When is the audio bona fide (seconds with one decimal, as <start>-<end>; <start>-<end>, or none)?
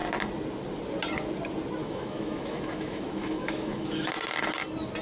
0.0-1.8; 4.1-5.0